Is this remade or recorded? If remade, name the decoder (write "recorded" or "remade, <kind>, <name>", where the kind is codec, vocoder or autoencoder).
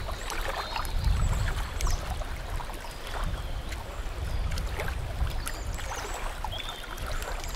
recorded